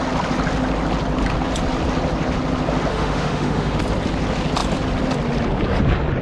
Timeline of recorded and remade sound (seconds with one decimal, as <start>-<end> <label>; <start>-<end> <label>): 0.0-2.9 recorded; 2.9-3.8 remade; 3.8-6.2 recorded